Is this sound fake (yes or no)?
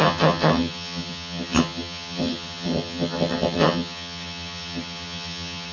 yes